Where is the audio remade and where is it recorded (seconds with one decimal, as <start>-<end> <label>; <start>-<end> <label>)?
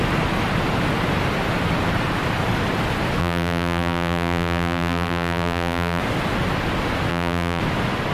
0.0-3.2 recorded; 3.2-6.0 remade; 6.0-7.1 recorded; 7.1-7.6 remade; 7.6-8.1 recorded